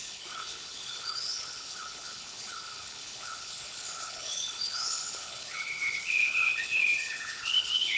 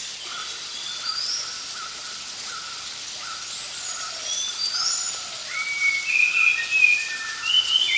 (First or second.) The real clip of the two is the second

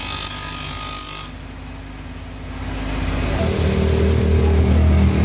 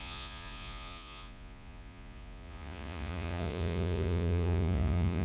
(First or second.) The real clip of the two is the first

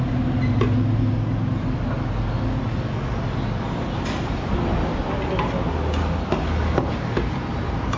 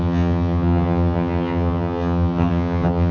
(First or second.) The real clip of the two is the first